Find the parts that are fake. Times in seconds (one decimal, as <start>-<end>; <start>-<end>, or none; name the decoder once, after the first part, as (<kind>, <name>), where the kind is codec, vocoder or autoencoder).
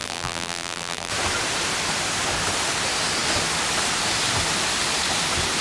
0.0-1.1 (vocoder, BigVGAN v2)